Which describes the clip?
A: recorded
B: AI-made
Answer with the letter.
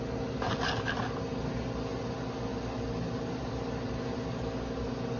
A